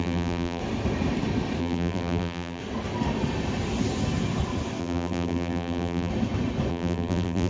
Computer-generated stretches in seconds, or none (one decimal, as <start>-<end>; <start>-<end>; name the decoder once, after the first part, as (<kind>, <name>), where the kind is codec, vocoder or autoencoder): 0.0-0.6 (vocoder, BigVGAN v2); 1.6-2.6; 4.8-6.1; 6.7-7.5